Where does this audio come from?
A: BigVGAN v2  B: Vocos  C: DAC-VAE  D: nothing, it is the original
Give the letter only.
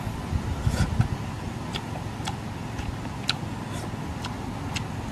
D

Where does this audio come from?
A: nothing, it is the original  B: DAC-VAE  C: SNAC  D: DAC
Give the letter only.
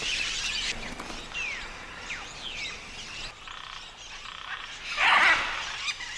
A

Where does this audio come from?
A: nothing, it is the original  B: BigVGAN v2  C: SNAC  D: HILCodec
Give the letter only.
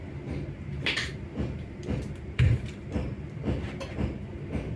B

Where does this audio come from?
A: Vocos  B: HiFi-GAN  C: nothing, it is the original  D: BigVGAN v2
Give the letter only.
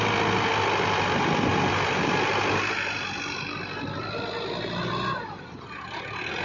C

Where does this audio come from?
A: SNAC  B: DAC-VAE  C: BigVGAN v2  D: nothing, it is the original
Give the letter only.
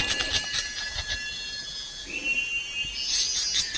D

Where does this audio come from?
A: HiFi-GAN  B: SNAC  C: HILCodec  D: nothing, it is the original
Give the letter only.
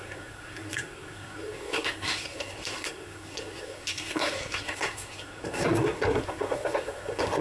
B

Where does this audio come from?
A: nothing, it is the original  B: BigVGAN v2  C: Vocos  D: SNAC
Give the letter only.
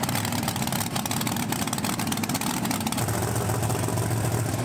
A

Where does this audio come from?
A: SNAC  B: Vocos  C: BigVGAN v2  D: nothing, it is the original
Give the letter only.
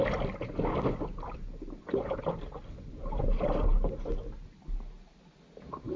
D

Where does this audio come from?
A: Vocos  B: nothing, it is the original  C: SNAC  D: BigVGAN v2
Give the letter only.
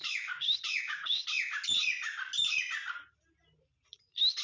B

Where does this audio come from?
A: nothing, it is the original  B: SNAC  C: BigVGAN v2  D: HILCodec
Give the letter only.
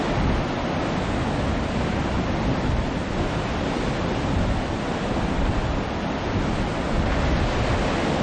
A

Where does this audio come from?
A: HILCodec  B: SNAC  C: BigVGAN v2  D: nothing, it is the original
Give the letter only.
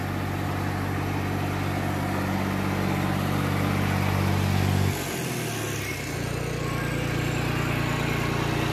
D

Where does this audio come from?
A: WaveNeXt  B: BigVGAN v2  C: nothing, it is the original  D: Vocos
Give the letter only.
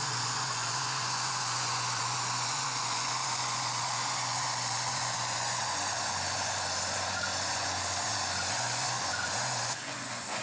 D